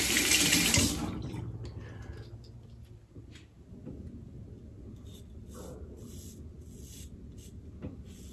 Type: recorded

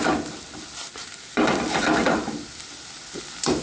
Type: recorded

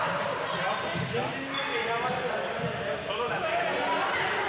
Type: recorded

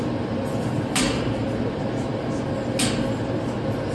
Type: recorded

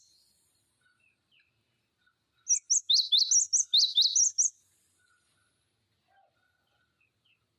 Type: recorded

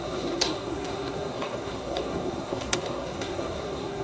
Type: remade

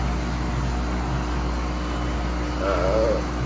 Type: recorded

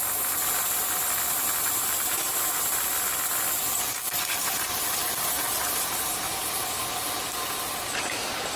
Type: recorded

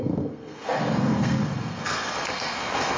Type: remade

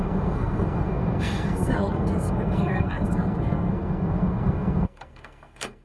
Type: remade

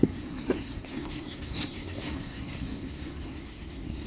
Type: remade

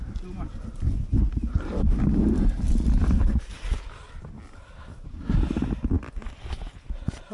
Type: recorded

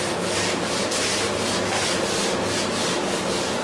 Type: recorded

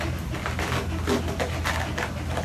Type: recorded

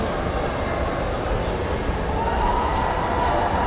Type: recorded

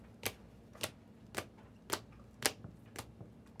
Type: recorded